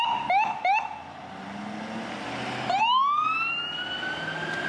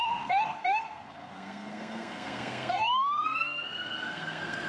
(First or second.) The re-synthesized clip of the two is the second